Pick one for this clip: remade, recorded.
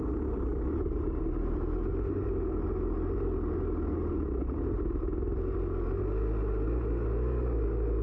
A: recorded